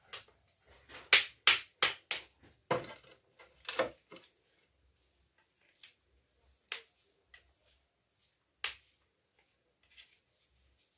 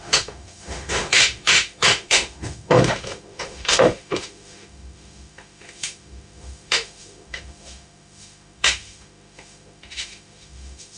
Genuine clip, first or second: first